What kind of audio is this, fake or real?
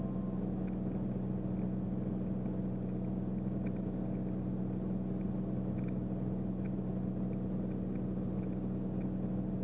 real